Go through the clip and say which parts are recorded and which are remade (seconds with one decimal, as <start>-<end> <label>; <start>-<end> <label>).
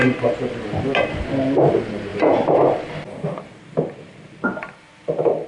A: 0.0-5.5 recorded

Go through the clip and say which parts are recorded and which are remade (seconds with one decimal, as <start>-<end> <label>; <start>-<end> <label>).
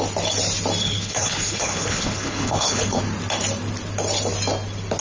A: 0.0-0.8 recorded; 0.8-3.0 remade; 3.0-5.0 recorded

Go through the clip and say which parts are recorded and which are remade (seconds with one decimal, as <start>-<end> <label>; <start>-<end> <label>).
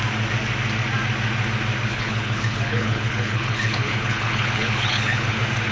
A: 0.0-1.9 recorded; 1.9-5.3 remade; 5.3-5.7 recorded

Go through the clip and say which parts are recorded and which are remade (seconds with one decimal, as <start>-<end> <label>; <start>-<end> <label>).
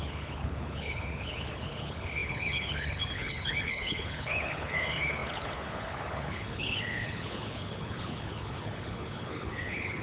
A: 0.0-10.0 remade